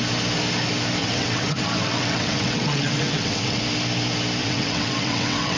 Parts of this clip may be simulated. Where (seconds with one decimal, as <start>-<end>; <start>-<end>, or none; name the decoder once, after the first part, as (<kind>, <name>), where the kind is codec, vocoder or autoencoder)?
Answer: 1.0-3.6 (vocoder, WaveNeXt); 4.4-5.6